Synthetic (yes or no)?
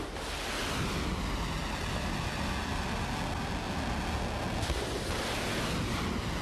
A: no